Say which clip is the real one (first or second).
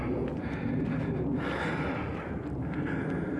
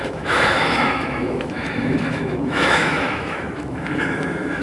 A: first